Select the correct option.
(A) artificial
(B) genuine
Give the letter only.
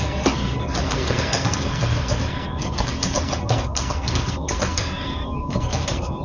A